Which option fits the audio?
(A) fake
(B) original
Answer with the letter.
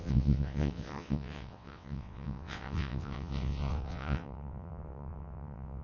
A